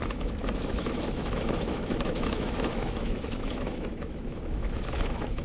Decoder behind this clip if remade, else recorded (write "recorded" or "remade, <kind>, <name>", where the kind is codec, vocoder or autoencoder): remade, autoencoder, DAC-VAE